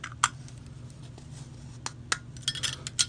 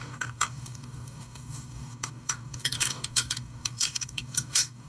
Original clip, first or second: first